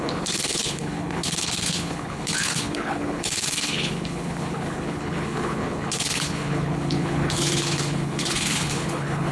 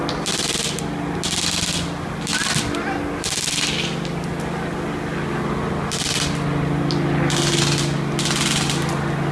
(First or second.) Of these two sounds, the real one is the second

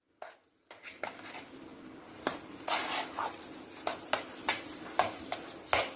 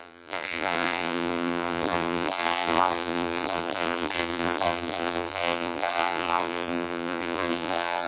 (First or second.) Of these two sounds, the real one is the first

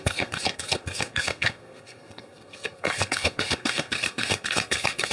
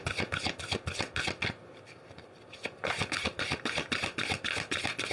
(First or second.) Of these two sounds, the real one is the second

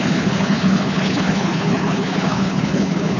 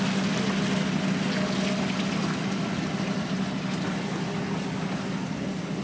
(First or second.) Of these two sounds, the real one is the second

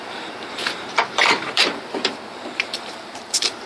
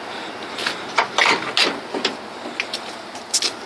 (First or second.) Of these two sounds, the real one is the second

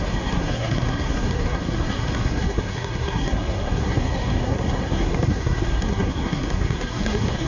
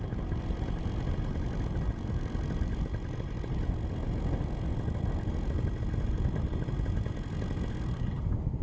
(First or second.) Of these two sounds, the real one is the second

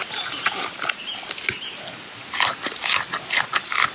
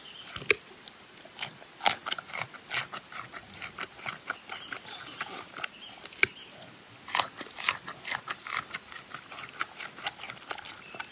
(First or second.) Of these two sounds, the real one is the first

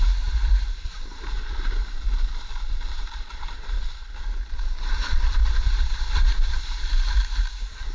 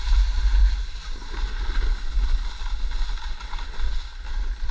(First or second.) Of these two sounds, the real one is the second